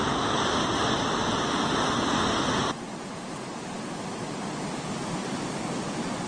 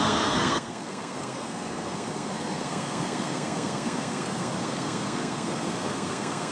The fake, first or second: second